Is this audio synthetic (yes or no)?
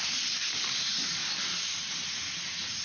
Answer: no